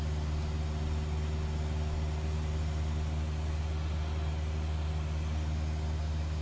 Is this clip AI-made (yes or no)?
no